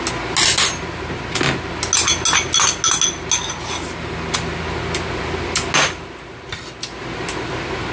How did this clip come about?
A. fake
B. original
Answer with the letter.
B